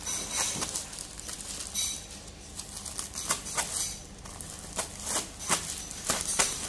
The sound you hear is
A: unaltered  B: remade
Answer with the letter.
A